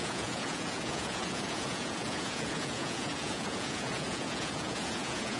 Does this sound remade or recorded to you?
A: remade